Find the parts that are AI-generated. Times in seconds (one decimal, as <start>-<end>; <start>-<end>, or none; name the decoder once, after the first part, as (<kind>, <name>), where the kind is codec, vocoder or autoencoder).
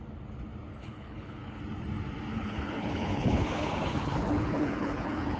0.8-1.6 (codec, HILCodec); 2.3-5.4